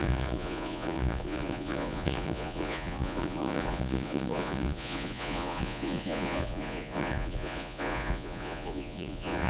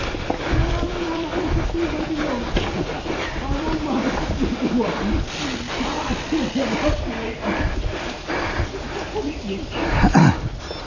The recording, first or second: second